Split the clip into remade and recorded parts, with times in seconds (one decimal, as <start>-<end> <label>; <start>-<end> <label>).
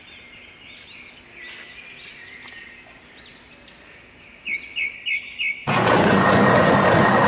0.0-5.6 recorded; 5.6-7.3 remade